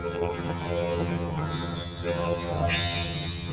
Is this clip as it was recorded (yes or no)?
no